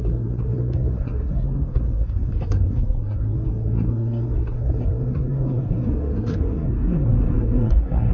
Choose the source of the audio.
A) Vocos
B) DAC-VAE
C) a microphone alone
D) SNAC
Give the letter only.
D